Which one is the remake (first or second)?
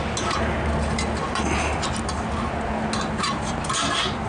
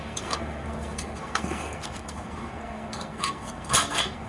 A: second